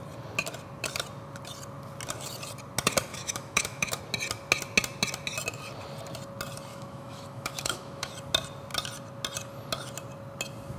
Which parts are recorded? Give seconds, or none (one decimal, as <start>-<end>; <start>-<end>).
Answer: 0.0-3.1; 4.0-6.7; 8.1-10.8

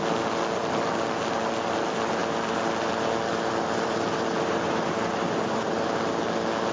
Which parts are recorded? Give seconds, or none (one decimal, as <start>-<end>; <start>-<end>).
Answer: 0.0-6.7

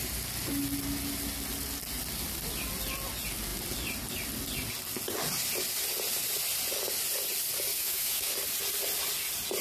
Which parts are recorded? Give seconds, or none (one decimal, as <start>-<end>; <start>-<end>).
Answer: 0.0-7.7; 8.3-9.6

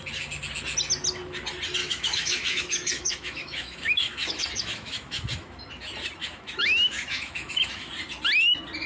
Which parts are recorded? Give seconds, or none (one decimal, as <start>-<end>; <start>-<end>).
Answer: 0.0-1.8; 5.6-6.2; 7.9-8.9

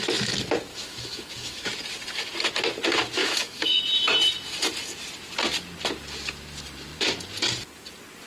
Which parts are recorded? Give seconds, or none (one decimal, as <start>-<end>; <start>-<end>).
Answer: 0.0-0.7; 1.7-3.2; 3.8-8.3

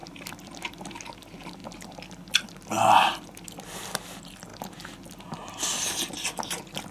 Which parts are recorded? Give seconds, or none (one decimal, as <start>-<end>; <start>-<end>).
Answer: 0.0-6.9